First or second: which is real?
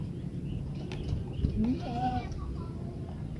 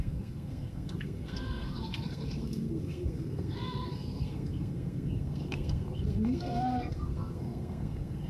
first